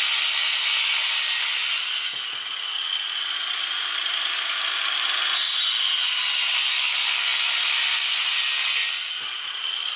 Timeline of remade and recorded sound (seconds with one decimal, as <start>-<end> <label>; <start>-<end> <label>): 0.0-10.0 recorded

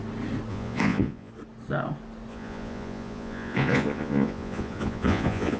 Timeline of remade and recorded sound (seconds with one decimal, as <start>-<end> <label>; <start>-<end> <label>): 0.0-0.5 recorded; 0.5-1.3 remade; 1.3-2.3 recorded; 2.3-5.6 remade

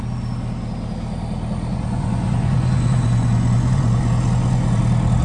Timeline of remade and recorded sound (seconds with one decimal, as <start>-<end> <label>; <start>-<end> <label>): 0.0-1.7 recorded; 1.7-4.8 remade; 4.8-5.2 recorded

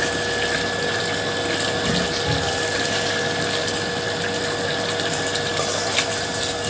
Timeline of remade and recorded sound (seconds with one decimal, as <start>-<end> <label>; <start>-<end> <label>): 0.0-6.7 recorded

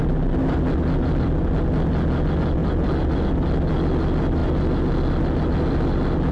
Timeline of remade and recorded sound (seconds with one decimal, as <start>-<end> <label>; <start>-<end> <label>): 0.0-6.3 recorded

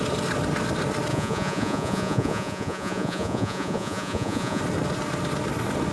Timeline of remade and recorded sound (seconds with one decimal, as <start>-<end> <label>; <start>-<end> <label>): 0.0-1.1 recorded; 1.1-4.6 remade; 4.6-5.9 recorded